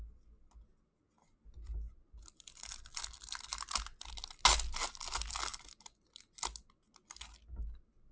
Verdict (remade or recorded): recorded